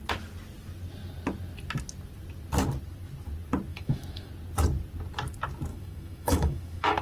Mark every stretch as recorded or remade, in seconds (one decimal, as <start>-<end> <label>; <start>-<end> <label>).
0.0-3.7 recorded; 3.7-4.3 remade; 4.3-5.7 recorded; 5.7-7.0 remade